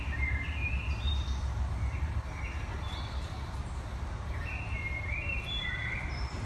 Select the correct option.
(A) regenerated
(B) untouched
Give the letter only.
B